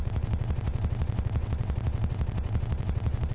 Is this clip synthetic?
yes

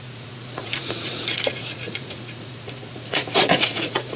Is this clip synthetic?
yes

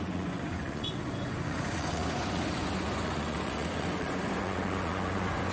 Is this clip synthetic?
yes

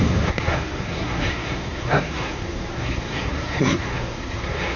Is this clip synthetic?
yes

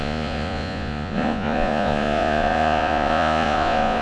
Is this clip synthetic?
yes